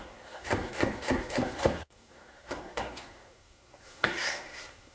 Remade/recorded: remade